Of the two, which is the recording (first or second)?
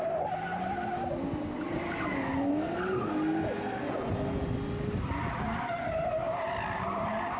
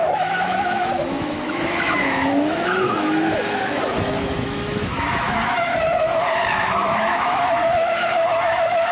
first